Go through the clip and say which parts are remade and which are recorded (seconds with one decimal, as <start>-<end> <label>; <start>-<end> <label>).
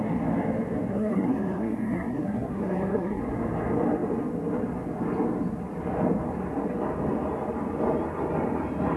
0.0-0.9 recorded; 0.9-3.2 remade; 3.2-9.0 recorded